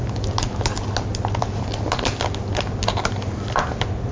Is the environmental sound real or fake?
real